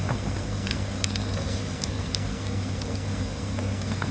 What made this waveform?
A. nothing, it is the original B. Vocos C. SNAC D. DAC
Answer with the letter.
C